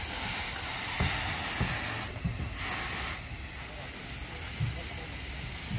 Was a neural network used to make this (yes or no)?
no